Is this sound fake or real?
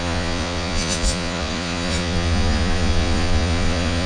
fake